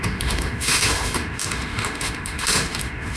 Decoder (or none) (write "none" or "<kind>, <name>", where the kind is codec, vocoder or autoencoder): autoencoder, DAC-VAE